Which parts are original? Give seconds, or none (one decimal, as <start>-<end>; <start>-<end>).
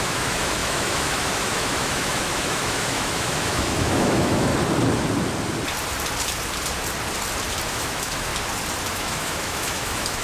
4.5-7.7; 8.3-8.9